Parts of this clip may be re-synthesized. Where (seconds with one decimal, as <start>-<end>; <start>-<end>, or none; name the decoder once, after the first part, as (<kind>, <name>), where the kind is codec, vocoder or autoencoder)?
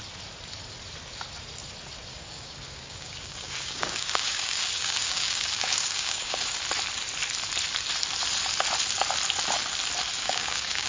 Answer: 2.1-6.4 (codec, DAC); 10.1-10.9